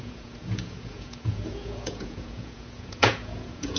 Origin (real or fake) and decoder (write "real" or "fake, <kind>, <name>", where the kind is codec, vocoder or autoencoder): fake, vocoder, Vocos